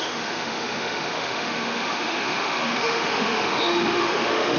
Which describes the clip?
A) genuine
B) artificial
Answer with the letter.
B